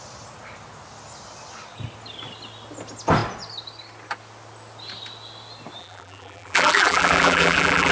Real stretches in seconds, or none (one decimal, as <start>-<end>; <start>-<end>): 0.0-5.8